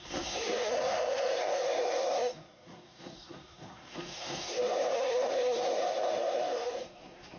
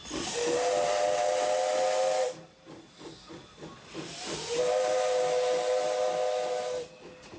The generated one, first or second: first